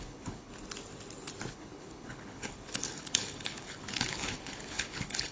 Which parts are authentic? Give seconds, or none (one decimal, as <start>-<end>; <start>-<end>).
0.5-1.5